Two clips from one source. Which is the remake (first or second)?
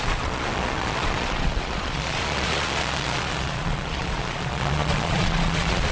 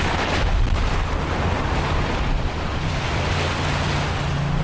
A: first